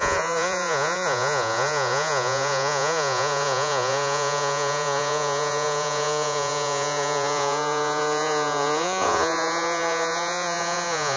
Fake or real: fake